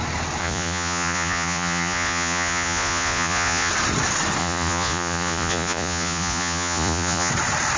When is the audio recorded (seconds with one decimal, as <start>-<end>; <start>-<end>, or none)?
0.0-0.4; 3.7-4.4; 7.3-7.8